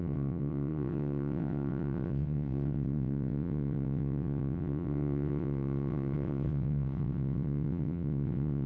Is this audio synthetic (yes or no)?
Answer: yes